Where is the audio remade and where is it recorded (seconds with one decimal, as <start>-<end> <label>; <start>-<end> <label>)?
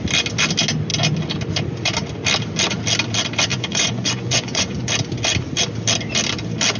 0.0-3.5 recorded; 3.5-4.9 remade; 4.9-6.8 recorded